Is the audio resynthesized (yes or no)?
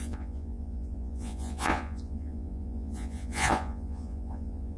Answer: yes